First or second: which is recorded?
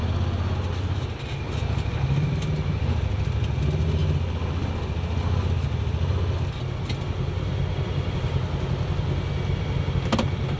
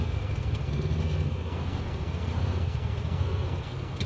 first